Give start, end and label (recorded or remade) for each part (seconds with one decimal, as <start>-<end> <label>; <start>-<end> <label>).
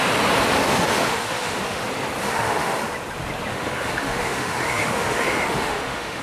0.0-0.6 recorded; 0.6-1.8 remade; 1.8-2.2 recorded; 2.2-2.8 remade; 2.8-3.5 recorded; 3.5-6.2 remade